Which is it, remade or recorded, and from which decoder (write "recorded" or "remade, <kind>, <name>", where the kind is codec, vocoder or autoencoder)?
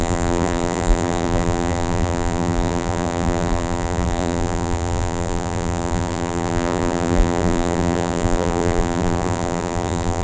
remade, vocoder, BigVGAN v2